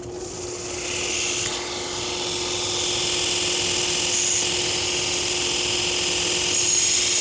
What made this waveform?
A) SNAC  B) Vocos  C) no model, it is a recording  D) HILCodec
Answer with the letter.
C